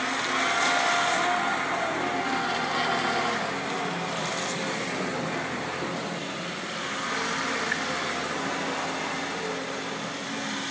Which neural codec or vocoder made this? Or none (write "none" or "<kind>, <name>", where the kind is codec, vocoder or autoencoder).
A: none